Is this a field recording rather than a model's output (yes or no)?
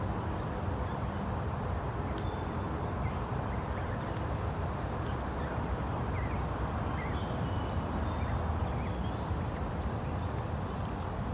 yes